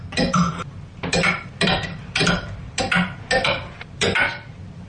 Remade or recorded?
remade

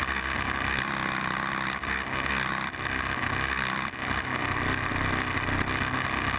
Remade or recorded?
recorded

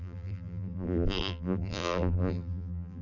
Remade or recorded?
remade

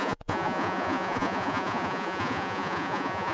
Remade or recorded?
remade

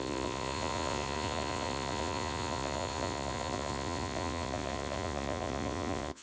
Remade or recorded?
remade